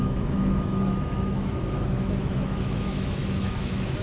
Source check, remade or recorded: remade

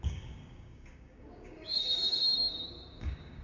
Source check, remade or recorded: remade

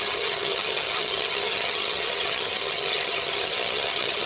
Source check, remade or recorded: remade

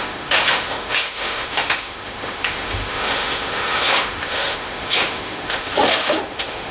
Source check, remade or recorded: remade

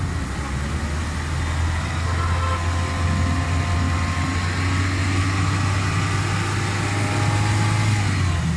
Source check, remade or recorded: recorded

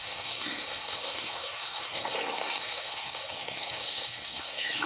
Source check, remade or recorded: remade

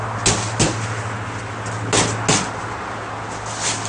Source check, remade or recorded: recorded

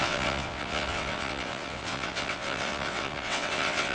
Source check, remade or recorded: remade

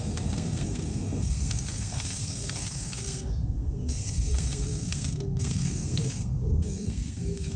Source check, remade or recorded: remade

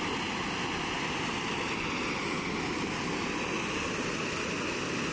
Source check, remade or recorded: recorded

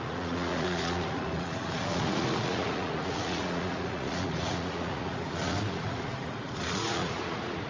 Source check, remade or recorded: remade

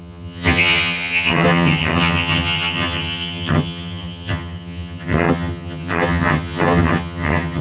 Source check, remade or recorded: remade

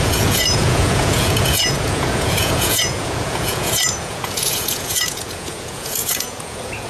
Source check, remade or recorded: remade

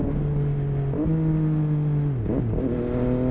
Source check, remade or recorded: recorded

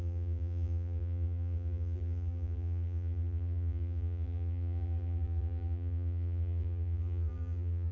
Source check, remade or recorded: remade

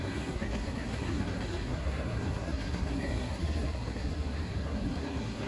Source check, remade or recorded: remade